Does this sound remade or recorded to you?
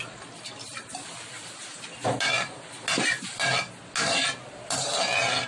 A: recorded